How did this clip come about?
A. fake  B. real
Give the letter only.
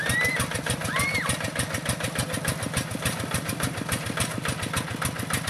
B